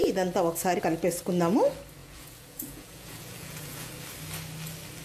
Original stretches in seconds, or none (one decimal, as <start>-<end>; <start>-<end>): 0.0-2.0; 3.9-5.0